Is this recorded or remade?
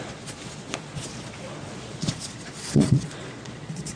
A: remade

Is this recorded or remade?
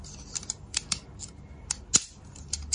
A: recorded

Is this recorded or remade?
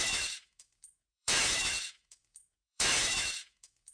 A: remade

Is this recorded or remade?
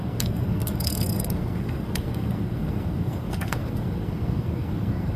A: remade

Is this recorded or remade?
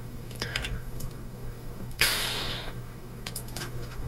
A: remade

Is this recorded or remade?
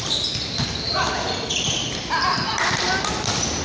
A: recorded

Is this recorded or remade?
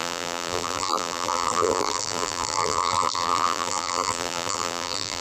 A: remade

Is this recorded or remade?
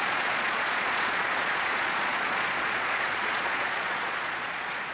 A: remade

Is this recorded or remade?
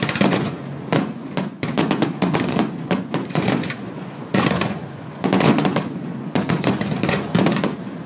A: remade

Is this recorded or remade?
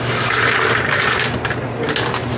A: recorded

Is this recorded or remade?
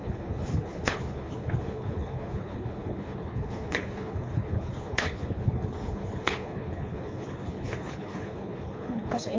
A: remade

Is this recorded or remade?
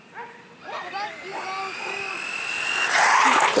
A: recorded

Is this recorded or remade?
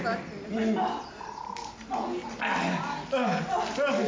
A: recorded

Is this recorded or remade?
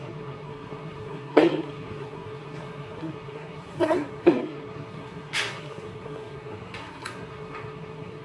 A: remade